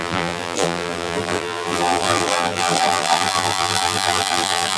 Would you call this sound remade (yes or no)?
yes